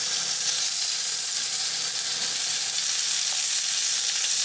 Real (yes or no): yes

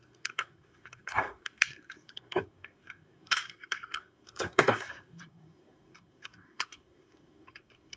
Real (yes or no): no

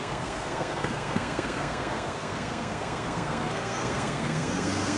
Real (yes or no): no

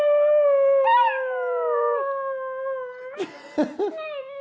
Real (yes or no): yes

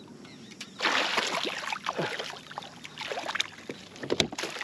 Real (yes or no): yes